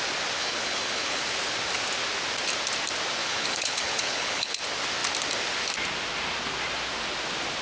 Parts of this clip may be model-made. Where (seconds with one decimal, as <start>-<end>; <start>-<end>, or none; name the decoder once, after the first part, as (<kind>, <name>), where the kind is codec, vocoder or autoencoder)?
0.4-1.2 (codec, HILCodec); 3.2-4.6